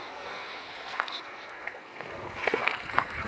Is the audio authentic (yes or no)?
no